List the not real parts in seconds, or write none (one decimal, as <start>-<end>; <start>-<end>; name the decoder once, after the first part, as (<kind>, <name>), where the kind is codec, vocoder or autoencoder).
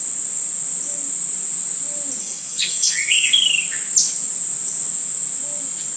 2.2-3.3 (codec, SNAC)